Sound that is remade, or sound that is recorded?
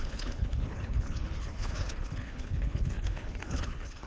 remade